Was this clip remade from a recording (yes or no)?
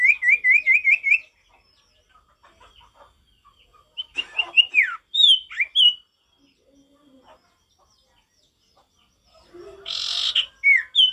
no